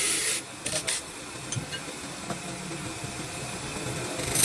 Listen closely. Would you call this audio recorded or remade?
recorded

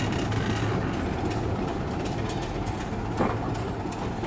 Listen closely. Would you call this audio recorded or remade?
recorded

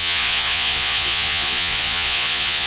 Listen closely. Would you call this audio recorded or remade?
remade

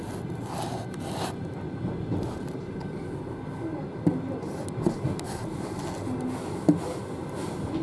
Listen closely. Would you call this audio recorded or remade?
recorded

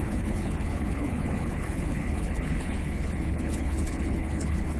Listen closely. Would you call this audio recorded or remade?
remade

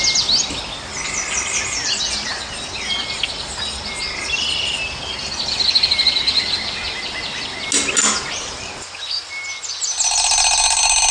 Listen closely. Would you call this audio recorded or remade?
recorded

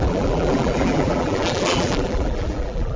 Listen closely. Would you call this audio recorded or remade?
remade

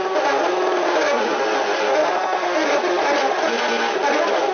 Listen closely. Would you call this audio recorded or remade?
recorded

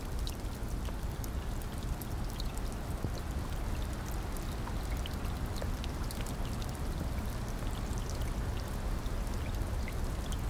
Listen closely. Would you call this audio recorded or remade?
recorded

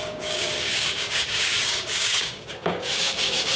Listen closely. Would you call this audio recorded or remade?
remade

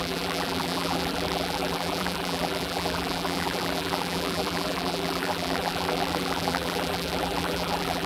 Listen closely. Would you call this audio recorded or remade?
remade